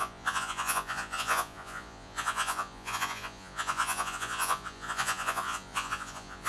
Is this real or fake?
fake